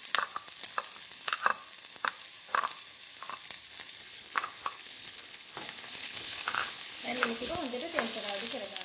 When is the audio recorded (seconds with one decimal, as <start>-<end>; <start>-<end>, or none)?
0.0-4.0; 7.5-8.8

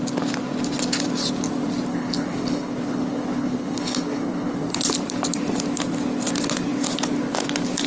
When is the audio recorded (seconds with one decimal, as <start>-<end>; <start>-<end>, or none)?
0.0-1.9; 4.8-7.9